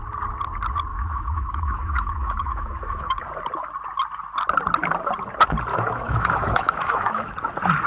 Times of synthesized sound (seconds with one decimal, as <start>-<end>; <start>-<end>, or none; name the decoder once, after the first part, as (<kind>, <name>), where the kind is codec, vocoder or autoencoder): 0.9-3.2 (autoencoder, DAC-VAE); 5.7-7.3